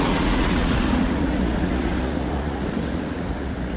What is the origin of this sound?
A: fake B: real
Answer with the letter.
A